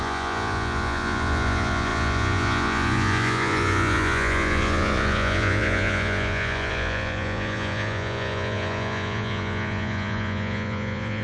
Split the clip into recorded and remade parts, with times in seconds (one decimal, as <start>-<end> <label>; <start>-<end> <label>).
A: 0.0-11.2 remade